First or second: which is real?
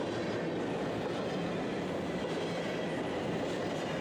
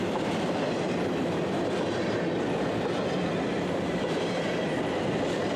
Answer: first